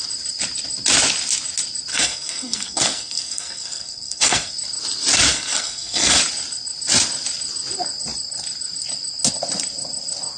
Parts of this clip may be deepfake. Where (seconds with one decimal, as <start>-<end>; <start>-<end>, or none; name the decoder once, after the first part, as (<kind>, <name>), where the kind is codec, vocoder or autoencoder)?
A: 1.9-4.5 (codec, SNAC); 5.3-6.2